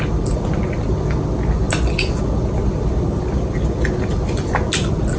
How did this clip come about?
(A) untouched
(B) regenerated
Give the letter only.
A